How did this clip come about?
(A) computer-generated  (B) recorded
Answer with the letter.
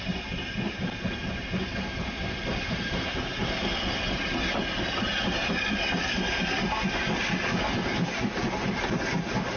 B